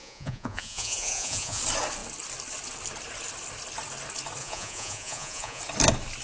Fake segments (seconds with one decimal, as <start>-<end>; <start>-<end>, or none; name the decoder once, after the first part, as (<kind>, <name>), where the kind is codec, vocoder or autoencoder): 0.0-1.6 (vocoder, Vocos); 4.4-5.6